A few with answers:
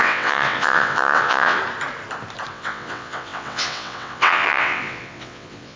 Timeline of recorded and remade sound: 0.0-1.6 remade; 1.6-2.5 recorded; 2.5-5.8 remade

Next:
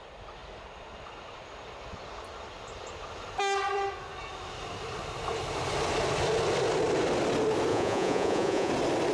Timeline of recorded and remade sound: 0.0-7.7 recorded; 7.7-8.7 remade; 8.7-9.1 recorded

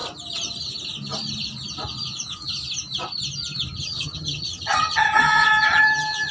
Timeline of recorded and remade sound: 0.0-3.8 recorded; 3.8-6.3 remade

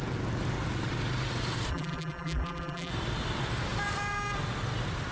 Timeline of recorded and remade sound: 0.0-1.7 recorded; 1.7-2.9 remade; 2.9-5.1 recorded

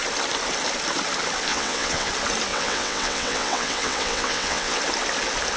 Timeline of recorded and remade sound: 0.0-1.5 recorded; 1.5-2.1 remade; 2.1-2.5 recorded; 2.5-4.8 remade; 4.8-5.6 recorded